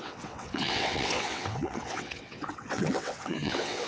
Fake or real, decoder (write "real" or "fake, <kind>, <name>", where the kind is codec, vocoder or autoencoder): fake, vocoder, WaveNeXt